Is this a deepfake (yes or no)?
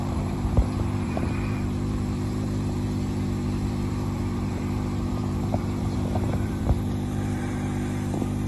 yes